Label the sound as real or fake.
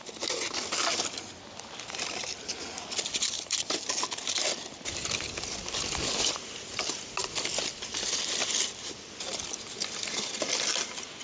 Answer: real